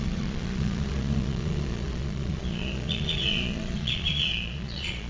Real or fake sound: fake